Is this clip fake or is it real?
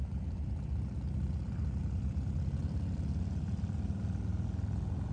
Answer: real